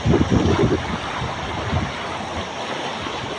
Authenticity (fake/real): real